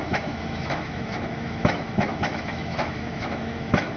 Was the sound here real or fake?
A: fake